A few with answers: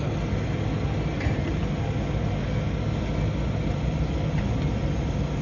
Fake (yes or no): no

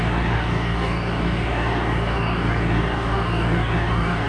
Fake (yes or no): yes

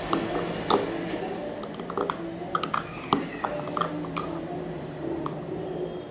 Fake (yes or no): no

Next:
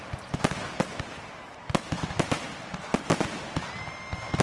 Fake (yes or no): no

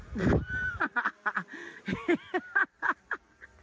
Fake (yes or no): yes